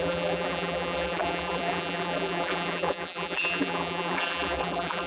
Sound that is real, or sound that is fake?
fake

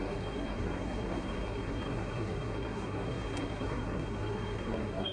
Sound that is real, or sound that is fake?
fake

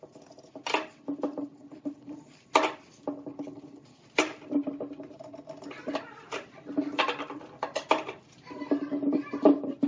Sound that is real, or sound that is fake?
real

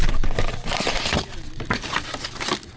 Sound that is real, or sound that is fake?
real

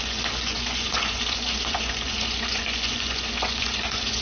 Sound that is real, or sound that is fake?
fake